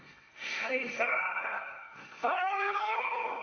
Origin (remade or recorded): remade